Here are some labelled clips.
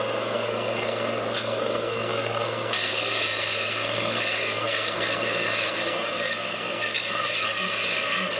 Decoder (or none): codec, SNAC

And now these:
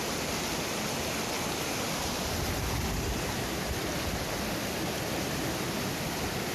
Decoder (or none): none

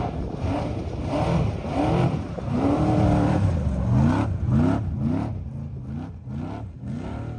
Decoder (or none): none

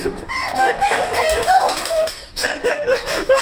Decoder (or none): codec, DAC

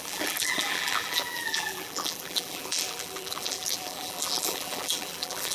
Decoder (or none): vocoder, BigVGAN v2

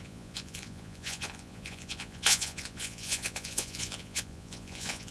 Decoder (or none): vocoder, Vocos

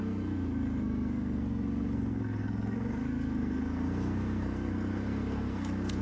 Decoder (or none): codec, SNAC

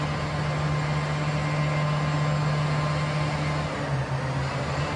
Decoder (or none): none